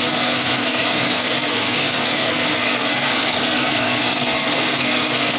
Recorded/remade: remade